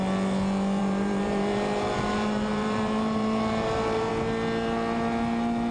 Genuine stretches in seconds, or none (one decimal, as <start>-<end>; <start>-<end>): 0.0-0.8; 4.1-5.7